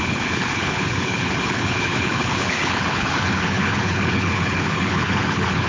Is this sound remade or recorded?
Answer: remade